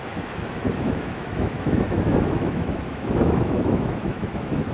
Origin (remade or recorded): remade